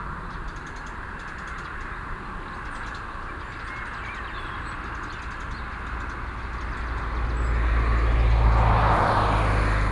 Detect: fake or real real